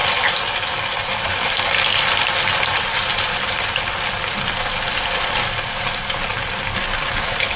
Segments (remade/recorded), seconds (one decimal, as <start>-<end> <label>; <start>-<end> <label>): 0.0-1.0 recorded; 1.0-7.6 remade

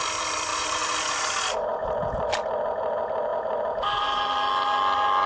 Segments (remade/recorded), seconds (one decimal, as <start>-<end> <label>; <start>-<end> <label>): 0.0-0.5 recorded; 0.5-1.3 remade; 1.3-1.8 recorded; 1.8-2.4 remade; 2.4-3.3 recorded; 3.3-4.2 remade; 4.2-5.3 recorded

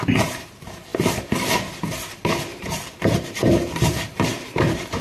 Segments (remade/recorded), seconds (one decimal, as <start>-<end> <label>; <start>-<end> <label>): 0.0-0.9 remade; 0.9-2.6 recorded; 2.6-5.0 remade

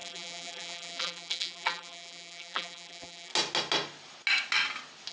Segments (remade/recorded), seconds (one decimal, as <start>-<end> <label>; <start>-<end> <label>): 0.0-3.3 remade; 3.3-5.1 recorded

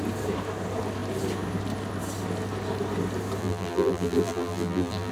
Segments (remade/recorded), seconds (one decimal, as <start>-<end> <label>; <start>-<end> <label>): 0.0-3.4 recorded; 3.4-5.1 remade

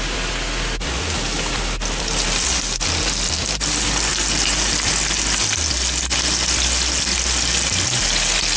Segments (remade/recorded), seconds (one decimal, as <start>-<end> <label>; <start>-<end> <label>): 0.0-4.1 recorded; 4.1-4.9 remade; 4.9-8.6 recorded